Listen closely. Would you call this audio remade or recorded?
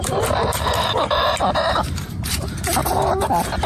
remade